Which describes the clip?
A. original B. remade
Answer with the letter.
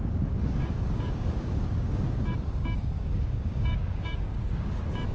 B